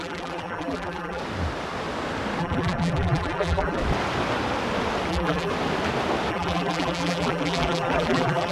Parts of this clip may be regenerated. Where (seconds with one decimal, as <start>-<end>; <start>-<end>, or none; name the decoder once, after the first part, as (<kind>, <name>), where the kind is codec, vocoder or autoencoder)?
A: 0.0-1.2 (vocoder, BigVGAN v2); 2.4-3.8; 5.1-5.5; 6.3-8.5